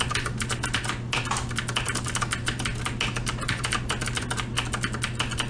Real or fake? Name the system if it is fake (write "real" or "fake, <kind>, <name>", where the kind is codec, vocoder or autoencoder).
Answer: real